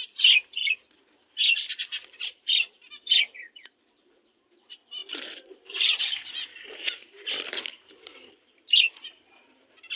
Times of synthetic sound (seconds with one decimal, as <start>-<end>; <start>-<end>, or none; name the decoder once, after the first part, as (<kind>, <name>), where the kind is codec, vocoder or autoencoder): 0.0-0.6 (vocoder, BigVGAN v2); 1.3-10.0